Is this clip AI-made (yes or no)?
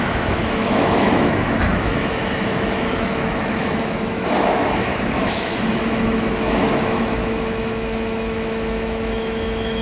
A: yes